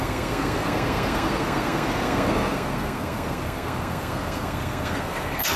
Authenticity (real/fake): fake